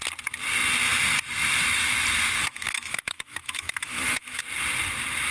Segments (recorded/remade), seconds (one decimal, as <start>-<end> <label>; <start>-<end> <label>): 0.0-2.4 recorded; 2.4-4.4 remade; 4.4-5.3 recorded